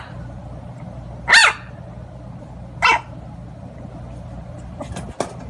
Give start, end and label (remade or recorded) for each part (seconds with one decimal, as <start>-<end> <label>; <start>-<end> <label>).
0.0-5.5 recorded